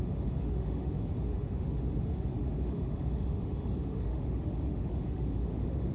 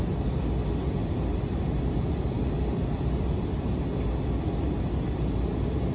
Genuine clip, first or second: second